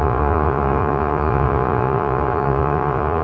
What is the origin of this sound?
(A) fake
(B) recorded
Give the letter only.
A